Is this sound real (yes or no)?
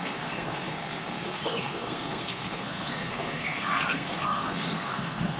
no